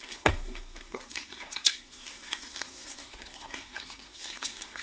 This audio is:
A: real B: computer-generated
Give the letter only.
B